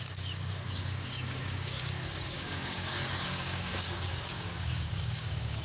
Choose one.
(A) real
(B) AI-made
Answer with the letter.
B